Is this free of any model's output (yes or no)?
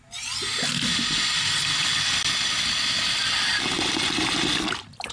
yes